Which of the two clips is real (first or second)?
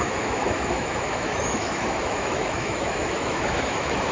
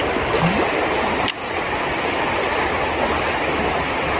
second